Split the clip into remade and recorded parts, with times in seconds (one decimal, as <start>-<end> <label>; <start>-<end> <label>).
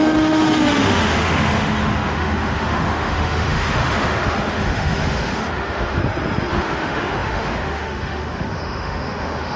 0.0-6.0 remade; 6.0-6.5 recorded; 6.5-9.6 remade